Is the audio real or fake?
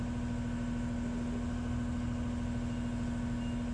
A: real